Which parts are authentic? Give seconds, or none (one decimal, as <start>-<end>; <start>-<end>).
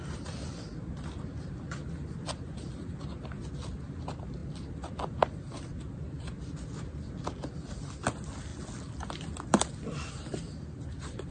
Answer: 0.0-11.3